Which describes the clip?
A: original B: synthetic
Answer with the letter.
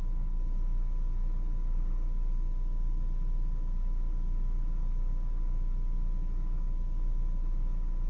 A